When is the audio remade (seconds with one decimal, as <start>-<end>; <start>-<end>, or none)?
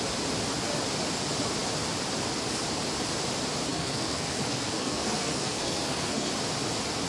3.7-6.3